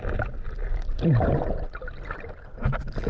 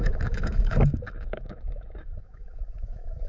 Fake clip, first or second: second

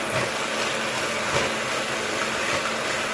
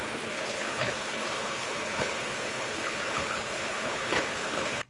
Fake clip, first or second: second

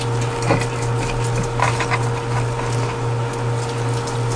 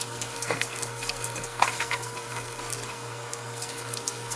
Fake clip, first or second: second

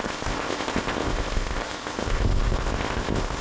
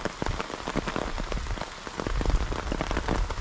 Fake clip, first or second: first